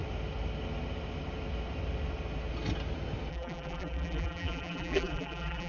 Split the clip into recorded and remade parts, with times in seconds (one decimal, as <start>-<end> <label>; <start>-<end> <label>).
0.0-3.3 recorded; 3.3-5.7 remade

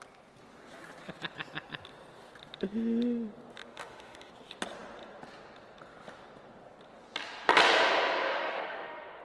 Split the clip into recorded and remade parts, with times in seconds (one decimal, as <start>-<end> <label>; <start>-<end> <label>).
0.0-3.6 recorded; 3.6-4.3 remade; 4.3-8.3 recorded; 8.3-9.2 remade

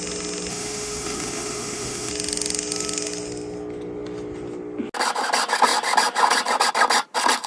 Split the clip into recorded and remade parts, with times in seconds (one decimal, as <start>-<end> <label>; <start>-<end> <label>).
0.0-0.5 recorded; 0.5-2.1 remade; 2.1-7.5 recorded

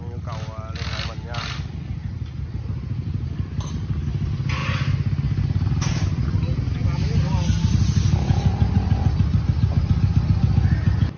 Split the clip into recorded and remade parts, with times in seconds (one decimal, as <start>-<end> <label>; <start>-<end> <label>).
0.0-11.2 recorded

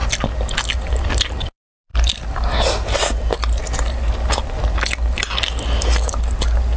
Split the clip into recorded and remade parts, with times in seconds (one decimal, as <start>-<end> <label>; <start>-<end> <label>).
0.0-6.8 recorded

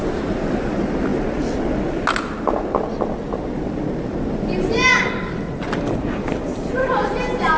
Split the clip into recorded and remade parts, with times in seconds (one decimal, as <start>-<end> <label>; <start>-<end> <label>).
0.0-7.6 recorded